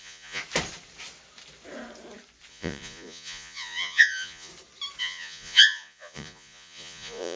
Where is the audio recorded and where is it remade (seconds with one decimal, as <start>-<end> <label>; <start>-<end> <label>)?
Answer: 0.0-0.4 remade; 0.4-2.5 recorded; 2.5-4.5 remade; 4.5-5.0 recorded; 5.0-7.4 remade